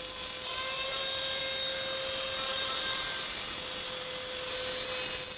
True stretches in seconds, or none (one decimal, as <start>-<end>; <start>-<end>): 0.0-0.9; 1.4-2.5; 3.4-5.4